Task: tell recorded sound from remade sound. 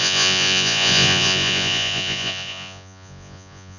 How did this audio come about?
remade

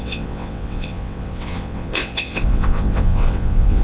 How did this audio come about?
remade